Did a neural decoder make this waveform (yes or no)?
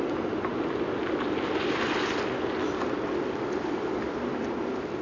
no